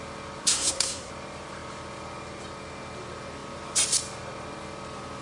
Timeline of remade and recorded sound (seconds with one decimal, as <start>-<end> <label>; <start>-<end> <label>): 0.0-0.4 recorded; 0.4-1.1 remade; 1.1-5.2 recorded